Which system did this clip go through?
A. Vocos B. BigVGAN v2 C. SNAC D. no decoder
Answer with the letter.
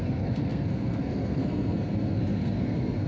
C